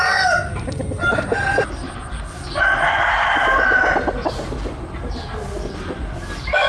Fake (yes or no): no